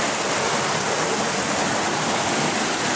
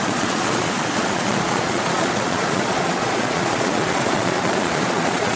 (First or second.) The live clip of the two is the first